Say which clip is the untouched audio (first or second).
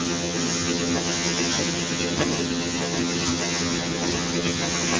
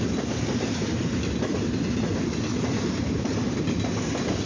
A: second